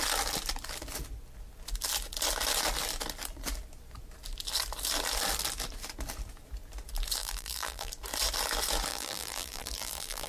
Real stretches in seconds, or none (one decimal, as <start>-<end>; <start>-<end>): 0.0-7.2; 7.9-8.9